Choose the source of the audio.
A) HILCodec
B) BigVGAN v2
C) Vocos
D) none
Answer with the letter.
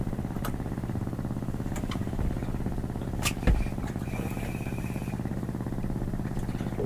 D